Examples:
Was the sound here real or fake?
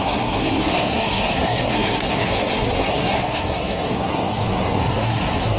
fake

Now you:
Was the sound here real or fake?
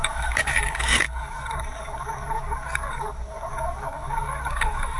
fake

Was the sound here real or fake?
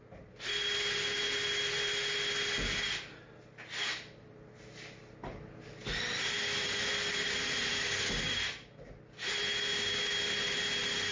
real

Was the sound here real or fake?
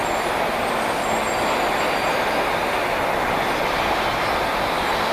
real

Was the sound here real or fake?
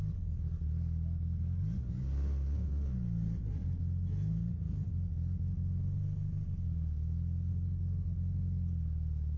real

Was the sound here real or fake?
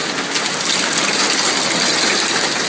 real